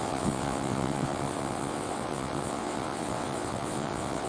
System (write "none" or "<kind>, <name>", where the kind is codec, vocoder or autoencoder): vocoder, WaveNeXt